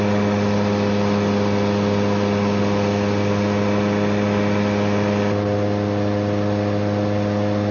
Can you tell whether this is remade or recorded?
recorded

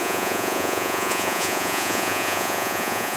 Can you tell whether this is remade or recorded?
remade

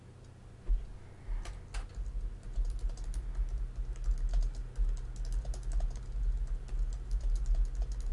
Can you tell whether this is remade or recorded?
recorded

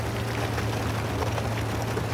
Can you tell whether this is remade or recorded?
recorded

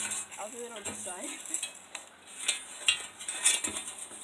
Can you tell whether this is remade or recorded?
recorded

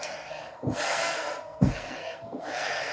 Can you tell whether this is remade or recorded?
remade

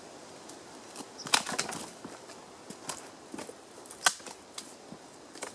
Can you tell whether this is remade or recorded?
recorded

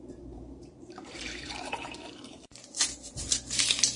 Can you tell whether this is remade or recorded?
remade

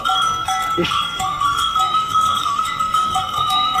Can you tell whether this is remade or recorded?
remade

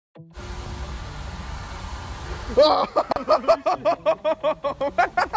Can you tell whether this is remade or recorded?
recorded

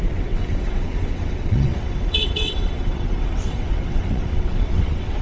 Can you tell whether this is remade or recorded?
remade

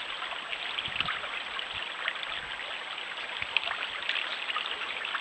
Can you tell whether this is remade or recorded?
recorded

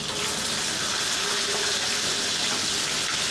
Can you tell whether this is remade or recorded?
recorded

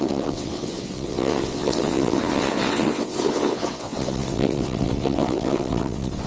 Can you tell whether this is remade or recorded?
remade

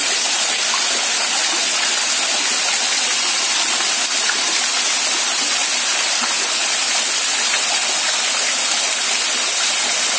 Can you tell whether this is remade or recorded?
recorded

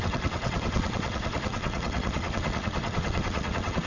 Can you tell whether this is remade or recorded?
remade